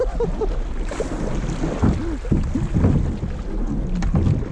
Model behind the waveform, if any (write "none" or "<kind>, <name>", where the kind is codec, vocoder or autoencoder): none